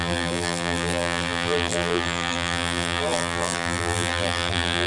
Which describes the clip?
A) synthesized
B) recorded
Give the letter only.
A